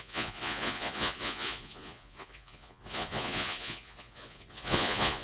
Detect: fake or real fake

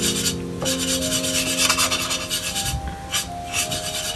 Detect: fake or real real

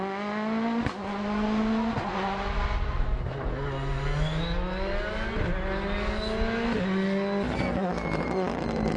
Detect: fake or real real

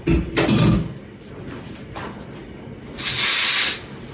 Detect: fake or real real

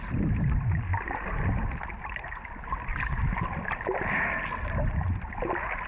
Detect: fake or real real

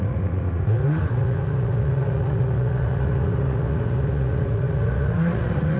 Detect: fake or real fake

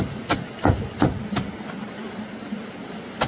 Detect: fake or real real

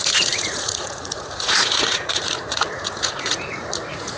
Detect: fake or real fake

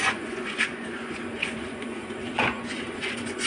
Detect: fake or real fake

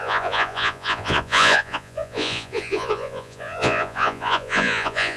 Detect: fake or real fake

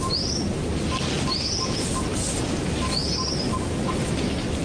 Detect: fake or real real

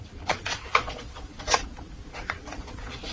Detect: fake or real fake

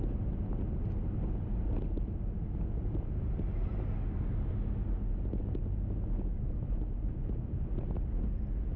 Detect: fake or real real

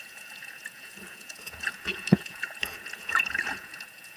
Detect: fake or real fake